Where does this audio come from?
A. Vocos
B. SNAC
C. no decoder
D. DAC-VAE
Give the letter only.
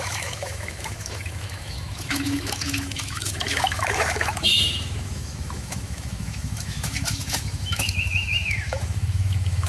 D